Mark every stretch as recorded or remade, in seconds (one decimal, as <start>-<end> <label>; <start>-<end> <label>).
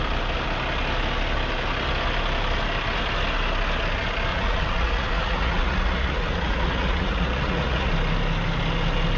0.0-4.3 recorded; 4.3-7.9 remade; 7.9-9.2 recorded